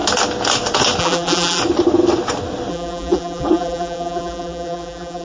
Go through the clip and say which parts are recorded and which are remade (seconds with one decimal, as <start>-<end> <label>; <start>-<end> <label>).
0.0-1.0 recorded; 1.0-1.6 remade; 1.6-2.7 recorded; 2.7-5.2 remade